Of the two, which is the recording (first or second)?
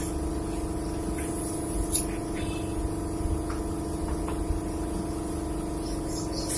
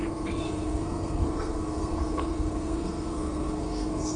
first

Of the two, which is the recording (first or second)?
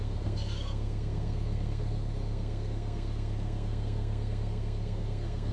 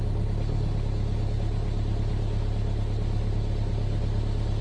second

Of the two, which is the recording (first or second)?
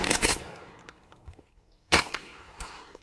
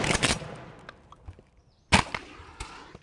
second